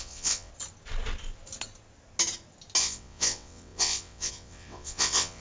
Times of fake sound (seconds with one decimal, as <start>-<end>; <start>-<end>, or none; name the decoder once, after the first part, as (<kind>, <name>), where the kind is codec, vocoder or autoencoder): 0.0-0.5 (vocoder, WaveNeXt); 2.8-5.4

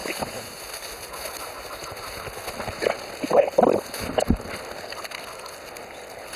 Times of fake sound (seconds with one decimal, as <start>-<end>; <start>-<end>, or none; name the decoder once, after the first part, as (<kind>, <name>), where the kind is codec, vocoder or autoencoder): none

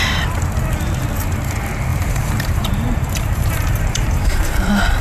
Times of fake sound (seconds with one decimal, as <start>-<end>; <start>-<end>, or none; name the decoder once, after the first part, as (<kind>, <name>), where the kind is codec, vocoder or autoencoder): 1.9-5.0 (vocoder, BigVGAN v2)

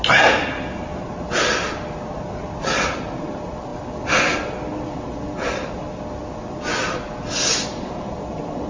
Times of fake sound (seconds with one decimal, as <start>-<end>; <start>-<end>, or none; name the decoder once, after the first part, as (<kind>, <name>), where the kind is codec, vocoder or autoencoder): none

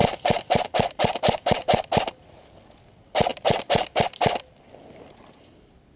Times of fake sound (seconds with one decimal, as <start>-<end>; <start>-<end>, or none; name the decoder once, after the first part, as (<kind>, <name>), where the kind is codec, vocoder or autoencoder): 0.0-1.6 (vocoder, BigVGAN v2); 3.3-4.0